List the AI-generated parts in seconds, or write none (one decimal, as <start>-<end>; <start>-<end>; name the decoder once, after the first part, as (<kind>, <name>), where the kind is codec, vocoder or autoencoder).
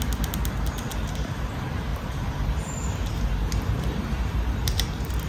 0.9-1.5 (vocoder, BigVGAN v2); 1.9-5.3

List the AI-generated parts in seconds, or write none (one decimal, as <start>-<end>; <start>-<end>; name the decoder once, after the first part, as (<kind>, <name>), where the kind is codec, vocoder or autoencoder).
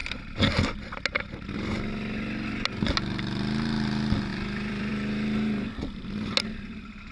0.0-0.8 (vocoder, BigVGAN v2); 4.3-4.9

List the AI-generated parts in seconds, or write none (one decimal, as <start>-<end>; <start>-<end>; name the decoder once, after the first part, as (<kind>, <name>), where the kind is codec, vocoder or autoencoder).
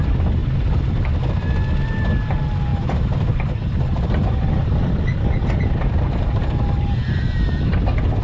2.7-7.6 (vocoder, BigVGAN v2)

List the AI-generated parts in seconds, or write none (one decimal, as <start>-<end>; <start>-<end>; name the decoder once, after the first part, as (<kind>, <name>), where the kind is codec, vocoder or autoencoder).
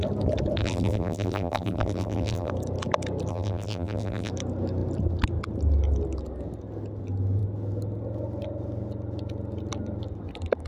0.6-2.5 (vocoder, BigVGAN v2); 3.3-4.3